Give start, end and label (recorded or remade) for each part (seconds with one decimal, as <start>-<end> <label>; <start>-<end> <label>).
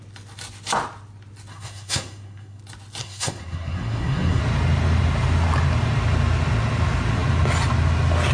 0.0-1.5 recorded; 1.5-2.6 remade; 2.6-3.0 recorded; 3.0-4.4 remade; 4.4-8.3 recorded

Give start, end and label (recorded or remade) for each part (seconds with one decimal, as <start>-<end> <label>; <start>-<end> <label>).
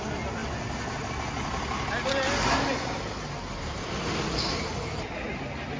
0.0-5.8 recorded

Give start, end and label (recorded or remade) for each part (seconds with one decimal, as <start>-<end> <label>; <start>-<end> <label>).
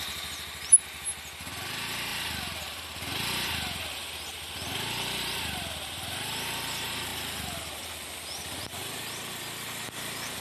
0.0-10.4 recorded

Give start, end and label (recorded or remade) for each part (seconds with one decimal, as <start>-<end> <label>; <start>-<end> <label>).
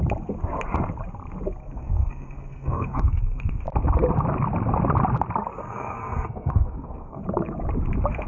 0.0-1.6 recorded; 1.6-3.6 remade; 3.6-5.6 recorded; 5.6-7.2 remade; 7.2-8.3 recorded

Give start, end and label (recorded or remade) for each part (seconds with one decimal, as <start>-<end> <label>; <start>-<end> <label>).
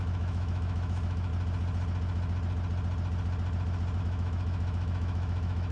0.0-1.3 remade; 1.3-4.0 recorded; 4.0-5.7 remade